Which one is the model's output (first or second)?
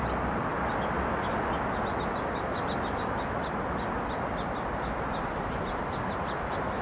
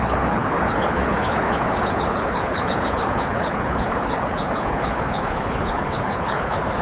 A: second